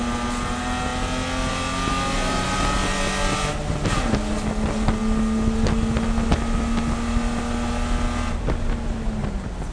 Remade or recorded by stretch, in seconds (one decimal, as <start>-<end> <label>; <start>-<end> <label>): 0.0-9.7 recorded